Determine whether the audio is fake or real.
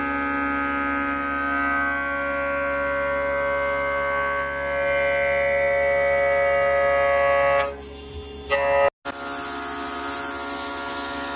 real